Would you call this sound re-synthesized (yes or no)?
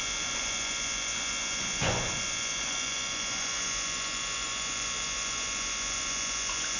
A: yes